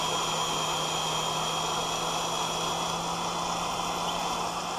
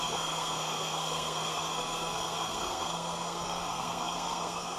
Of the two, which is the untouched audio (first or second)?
first